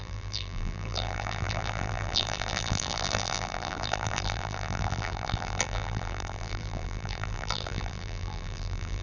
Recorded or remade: remade